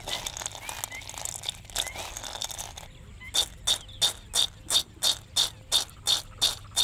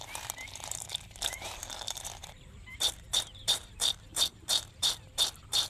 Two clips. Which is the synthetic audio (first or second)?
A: second